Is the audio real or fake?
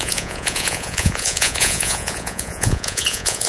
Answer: fake